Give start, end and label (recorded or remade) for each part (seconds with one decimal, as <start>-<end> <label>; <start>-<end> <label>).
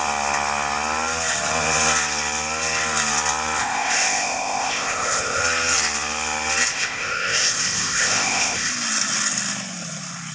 0.0-3.6 recorded; 3.6-5.4 remade; 5.4-6.7 recorded; 6.7-8.7 remade; 8.7-10.3 recorded